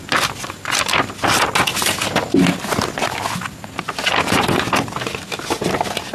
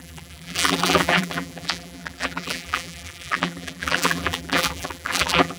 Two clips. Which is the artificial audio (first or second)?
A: second